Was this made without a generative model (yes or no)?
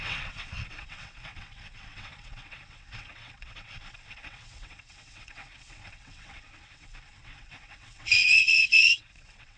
no